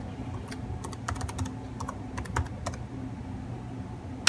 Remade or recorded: recorded